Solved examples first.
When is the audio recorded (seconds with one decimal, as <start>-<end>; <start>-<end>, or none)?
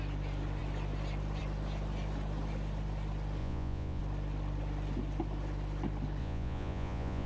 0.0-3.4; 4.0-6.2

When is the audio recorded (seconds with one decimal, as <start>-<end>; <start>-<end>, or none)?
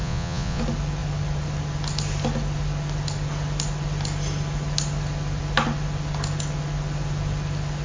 0.6-7.8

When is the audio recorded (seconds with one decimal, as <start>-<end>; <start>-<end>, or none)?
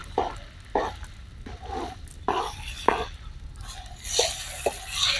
0.0-5.2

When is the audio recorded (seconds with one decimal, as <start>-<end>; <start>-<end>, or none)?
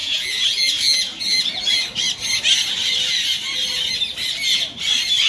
1.2-5.3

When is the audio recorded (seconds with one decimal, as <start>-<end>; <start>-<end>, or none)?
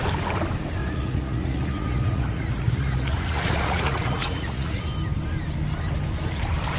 0.0-0.8; 4.9-6.8